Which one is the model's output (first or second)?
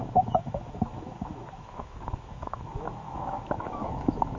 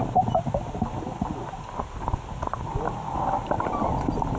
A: first